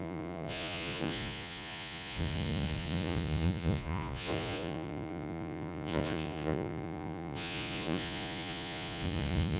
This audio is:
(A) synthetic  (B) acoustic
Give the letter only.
A